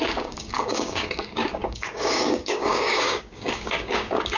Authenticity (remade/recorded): remade